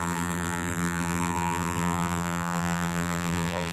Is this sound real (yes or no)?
no